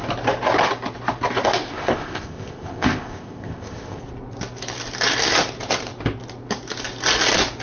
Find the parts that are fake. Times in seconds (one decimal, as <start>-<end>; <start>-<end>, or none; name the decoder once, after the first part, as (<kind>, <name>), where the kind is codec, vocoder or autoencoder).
1.6-4.0 (codec, ZipCodec)